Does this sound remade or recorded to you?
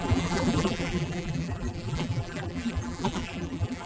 remade